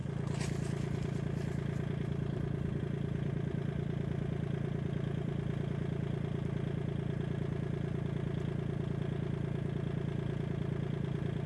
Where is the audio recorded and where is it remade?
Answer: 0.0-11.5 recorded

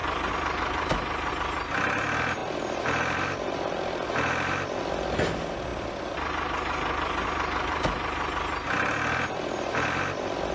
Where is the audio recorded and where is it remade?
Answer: 0.0-10.5 recorded

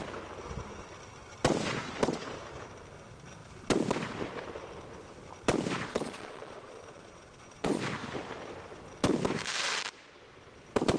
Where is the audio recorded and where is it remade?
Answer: 0.0-5.9 recorded; 5.9-7.8 remade; 7.8-11.0 recorded

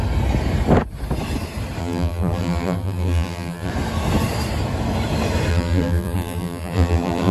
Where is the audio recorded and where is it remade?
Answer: 0.0-1.8 recorded; 1.8-3.7 remade; 3.7-5.5 recorded; 5.5-7.3 remade